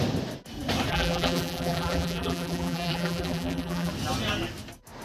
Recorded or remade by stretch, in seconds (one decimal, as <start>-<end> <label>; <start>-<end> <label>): 0.0-0.9 recorded; 0.9-3.9 remade; 3.9-5.0 recorded